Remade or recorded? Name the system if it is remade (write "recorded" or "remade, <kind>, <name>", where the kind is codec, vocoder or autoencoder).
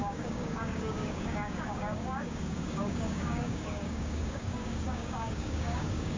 remade, codec, DAC